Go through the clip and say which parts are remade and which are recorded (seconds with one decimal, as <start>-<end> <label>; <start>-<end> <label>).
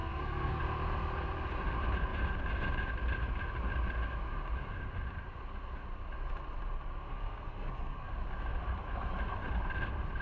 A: 0.0-0.6 remade; 0.6-7.1 recorded; 7.1-8.1 remade; 8.1-10.2 recorded